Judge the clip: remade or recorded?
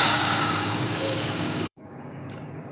remade